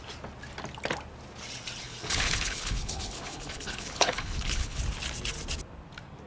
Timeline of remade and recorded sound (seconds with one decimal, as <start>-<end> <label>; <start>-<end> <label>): 0.0-1.8 recorded; 1.8-4.8 remade; 4.8-6.3 recorded